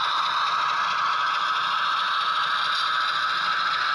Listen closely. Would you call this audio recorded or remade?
recorded